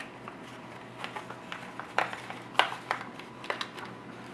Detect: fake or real real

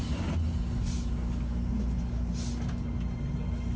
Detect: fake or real real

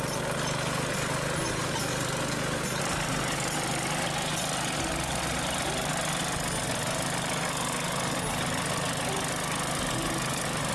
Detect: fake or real real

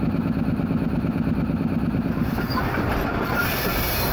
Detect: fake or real real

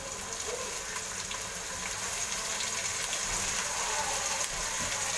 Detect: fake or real real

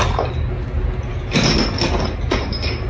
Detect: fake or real real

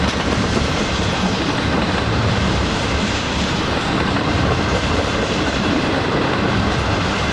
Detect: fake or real fake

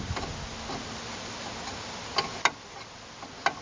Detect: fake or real real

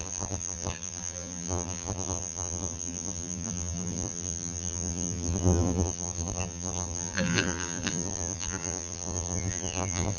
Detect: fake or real fake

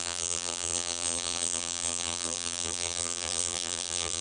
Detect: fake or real fake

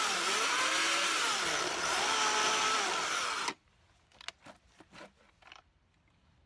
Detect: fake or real real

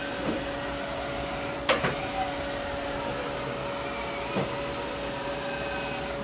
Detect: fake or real real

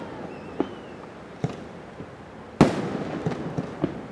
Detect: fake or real real